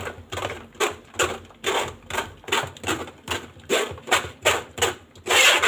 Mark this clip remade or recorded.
recorded